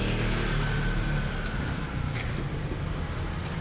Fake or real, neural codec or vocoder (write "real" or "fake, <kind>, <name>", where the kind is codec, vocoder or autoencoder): real